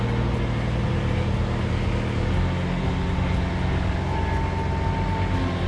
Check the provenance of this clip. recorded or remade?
recorded